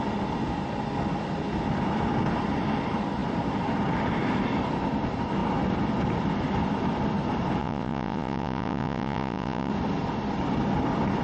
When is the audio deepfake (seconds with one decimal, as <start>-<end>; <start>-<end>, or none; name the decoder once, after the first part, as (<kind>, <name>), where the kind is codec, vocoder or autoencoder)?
7.6-9.7 (vocoder, Vocos)